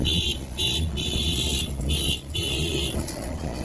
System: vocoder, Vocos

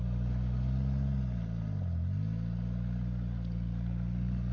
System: none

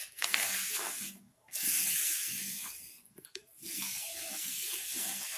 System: codec, SNAC